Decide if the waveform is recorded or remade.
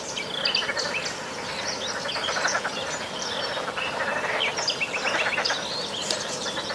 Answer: recorded